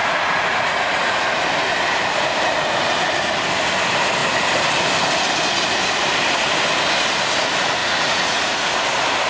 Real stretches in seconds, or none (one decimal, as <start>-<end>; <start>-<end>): 1.4-7.8; 8.8-9.3